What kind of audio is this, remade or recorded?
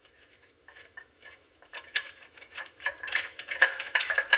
remade